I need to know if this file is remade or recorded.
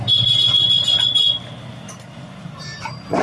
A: recorded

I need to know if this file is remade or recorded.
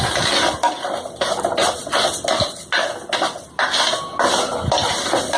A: recorded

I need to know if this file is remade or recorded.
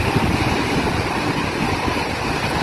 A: recorded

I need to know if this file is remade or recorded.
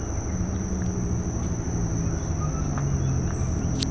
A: recorded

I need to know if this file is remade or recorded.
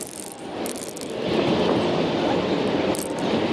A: recorded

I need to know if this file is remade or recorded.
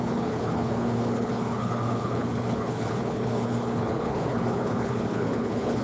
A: remade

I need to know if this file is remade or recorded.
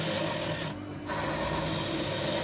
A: recorded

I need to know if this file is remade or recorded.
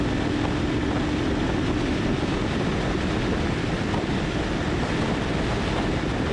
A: recorded